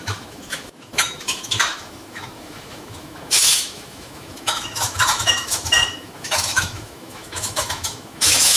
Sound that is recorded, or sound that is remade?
remade